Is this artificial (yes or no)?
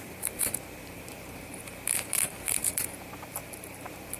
yes